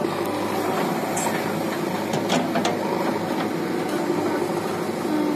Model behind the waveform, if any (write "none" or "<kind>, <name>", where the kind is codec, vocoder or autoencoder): none